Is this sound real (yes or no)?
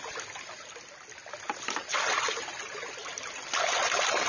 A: yes